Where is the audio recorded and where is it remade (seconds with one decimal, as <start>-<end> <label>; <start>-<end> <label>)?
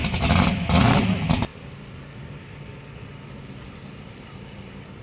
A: 0.0-5.0 remade